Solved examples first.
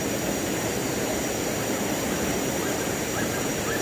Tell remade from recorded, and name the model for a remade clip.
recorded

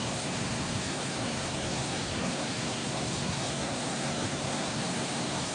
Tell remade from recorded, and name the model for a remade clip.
remade, codec, SNAC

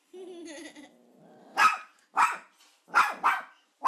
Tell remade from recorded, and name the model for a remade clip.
recorded